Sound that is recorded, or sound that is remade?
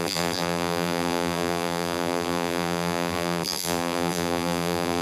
remade